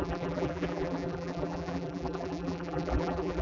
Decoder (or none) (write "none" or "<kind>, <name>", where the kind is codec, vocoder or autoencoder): vocoder, BigVGAN v2